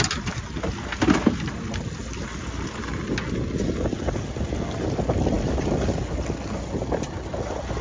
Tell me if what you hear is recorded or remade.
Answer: recorded